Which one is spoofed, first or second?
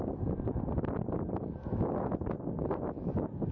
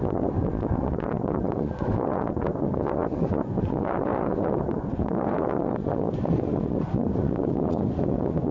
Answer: second